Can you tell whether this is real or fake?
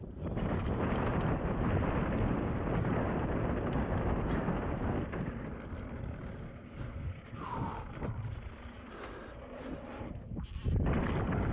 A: real